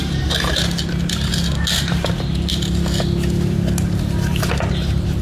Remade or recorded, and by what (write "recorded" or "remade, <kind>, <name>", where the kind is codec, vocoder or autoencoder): recorded